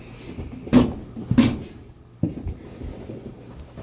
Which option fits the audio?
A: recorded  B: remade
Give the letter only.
A